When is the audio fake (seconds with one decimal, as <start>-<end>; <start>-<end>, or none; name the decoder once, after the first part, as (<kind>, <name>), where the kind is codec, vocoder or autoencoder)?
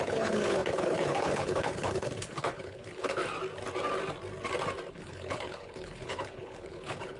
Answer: 0.0-3.2 (codec, HILCodec); 4.9-7.2